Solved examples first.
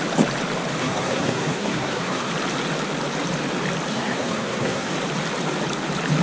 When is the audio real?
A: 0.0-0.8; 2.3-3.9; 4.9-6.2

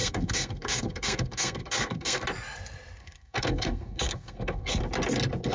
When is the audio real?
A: 2.2-3.0; 4.8-5.5

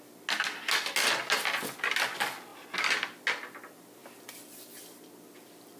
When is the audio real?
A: 0.0-5.8

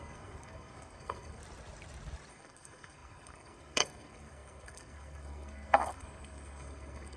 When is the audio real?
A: 1.4-2.3

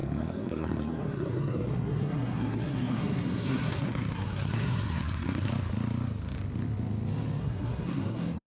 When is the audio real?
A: 5.5-7.4

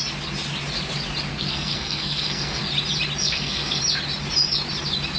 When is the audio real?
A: 0.0-1.3; 2.6-3.2; 3.8-5.2

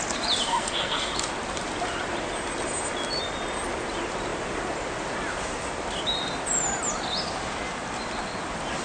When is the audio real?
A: 0.0-0.5; 1.1-8.8

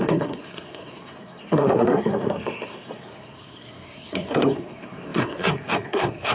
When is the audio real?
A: none